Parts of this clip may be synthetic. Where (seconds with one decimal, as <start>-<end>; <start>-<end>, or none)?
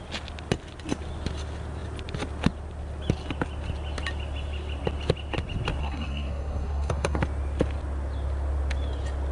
5.8-7.2